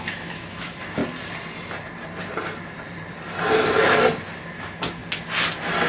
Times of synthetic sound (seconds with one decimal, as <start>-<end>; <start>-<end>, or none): 0.0-1.0; 4.5-5.0

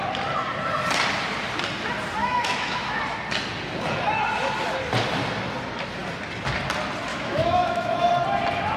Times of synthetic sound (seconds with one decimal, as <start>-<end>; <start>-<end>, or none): 2.2-3.0; 7.1-8.1

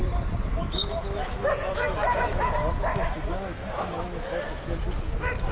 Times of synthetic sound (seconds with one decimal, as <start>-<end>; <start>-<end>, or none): 0.5-2.5; 2.9-4.4

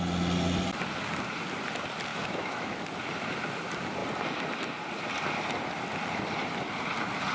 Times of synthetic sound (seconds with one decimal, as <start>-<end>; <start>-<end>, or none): 2.1-2.8

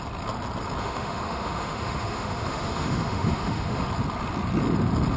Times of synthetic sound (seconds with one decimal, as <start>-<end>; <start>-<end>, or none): 0.8-3.9